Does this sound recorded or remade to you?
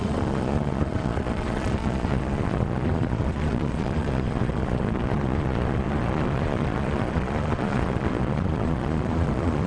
remade